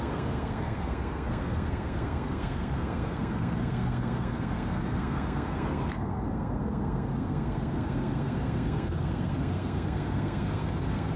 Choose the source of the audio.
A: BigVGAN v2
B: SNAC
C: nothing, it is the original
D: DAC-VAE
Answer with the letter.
B